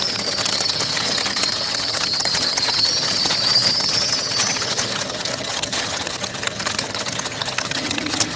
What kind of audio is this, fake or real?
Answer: fake